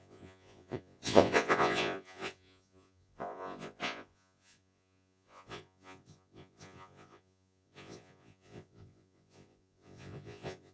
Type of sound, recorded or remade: remade